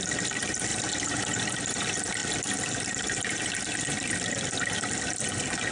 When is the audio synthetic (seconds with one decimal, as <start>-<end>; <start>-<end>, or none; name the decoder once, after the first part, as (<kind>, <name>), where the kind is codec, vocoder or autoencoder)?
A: 0.7-1.4 (vocoder, BigVGAN v2)